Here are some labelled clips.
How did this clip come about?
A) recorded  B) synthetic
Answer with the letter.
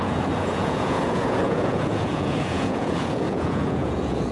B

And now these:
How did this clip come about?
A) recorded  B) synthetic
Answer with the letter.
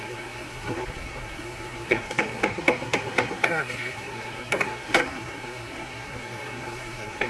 B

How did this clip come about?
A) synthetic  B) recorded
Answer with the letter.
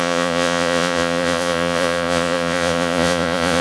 A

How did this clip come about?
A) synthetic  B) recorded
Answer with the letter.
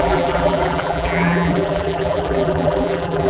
A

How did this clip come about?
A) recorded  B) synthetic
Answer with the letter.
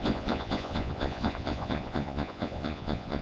B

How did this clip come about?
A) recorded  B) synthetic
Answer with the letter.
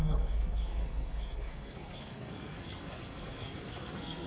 B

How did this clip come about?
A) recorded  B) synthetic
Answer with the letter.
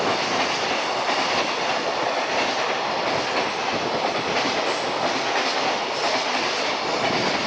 A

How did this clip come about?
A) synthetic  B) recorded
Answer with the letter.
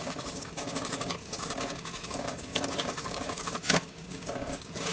A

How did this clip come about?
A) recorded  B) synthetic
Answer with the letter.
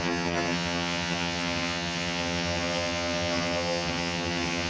B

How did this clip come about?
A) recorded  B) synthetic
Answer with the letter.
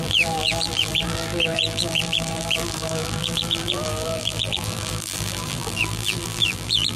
B